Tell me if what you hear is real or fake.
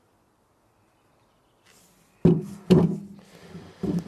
real